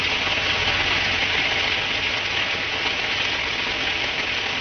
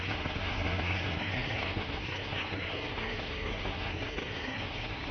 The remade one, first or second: second